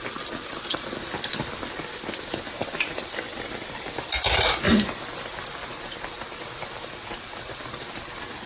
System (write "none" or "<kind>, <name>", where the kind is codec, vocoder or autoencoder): none